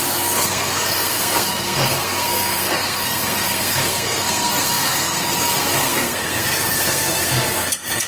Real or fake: fake